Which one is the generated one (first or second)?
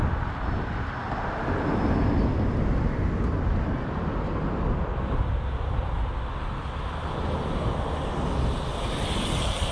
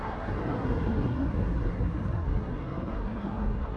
second